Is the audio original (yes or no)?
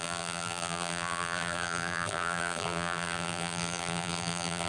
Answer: no